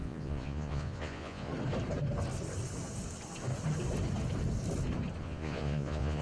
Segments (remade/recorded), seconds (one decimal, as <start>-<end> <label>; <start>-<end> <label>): 0.0-1.5 remade; 1.5-5.2 recorded; 5.2-6.2 remade